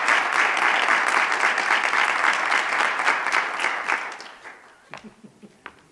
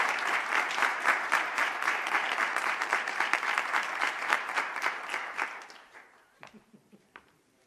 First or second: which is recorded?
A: first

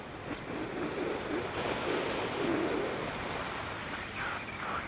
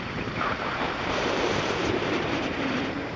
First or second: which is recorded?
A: first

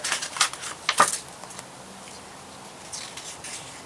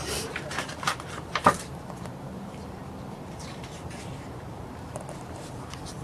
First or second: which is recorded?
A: first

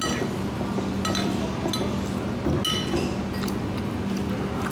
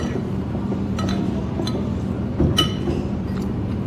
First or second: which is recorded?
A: first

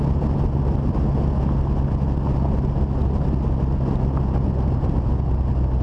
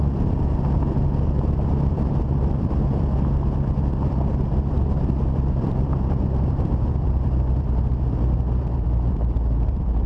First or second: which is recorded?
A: first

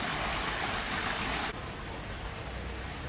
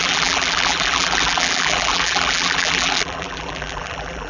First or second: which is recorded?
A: first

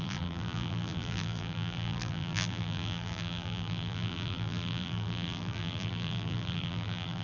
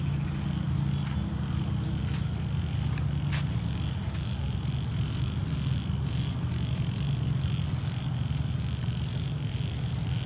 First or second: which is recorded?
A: second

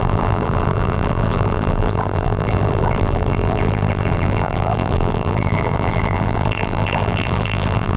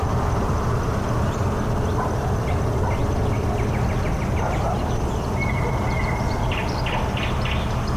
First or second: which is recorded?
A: second